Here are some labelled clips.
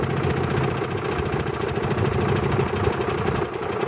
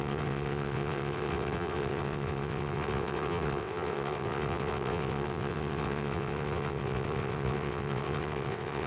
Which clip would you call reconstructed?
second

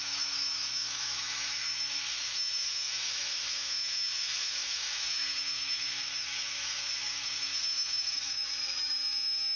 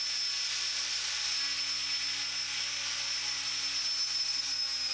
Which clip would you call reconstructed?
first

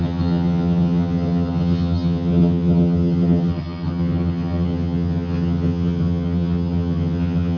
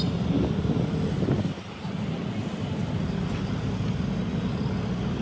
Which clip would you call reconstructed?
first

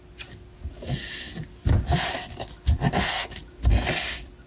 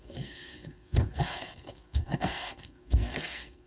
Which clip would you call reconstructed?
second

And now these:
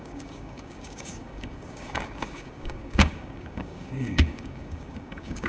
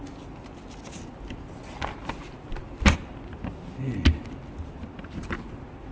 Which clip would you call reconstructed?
first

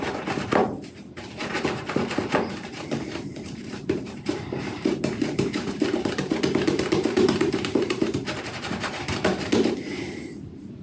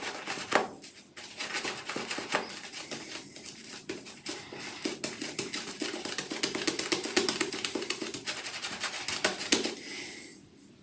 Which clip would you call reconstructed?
first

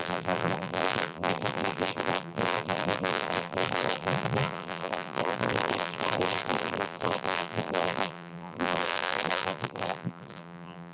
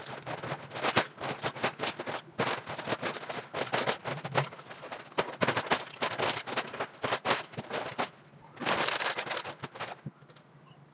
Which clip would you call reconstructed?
first